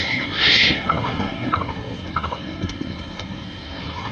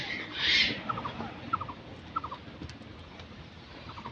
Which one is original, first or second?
second